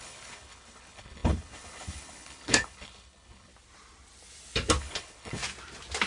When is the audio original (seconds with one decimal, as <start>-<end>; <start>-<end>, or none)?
3.5-4.8; 5.4-6.1